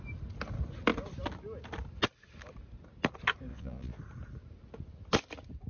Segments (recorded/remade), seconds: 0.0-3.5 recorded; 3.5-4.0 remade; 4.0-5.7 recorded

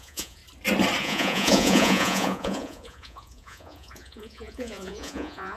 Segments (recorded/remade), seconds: 0.0-0.4 remade; 0.4-1.0 recorded; 1.0-5.6 remade

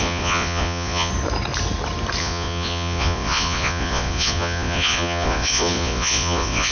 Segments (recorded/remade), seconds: 0.0-1.1 remade; 1.1-2.2 recorded; 2.2-6.7 remade

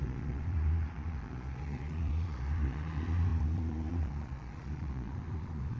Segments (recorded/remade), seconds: 0.0-5.8 remade

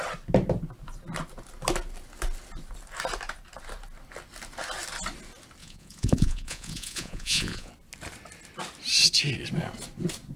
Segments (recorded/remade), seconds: 0.0-5.6 recorded; 5.6-7.7 remade; 7.7-10.4 recorded